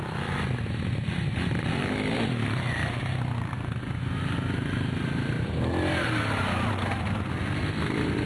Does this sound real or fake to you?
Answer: real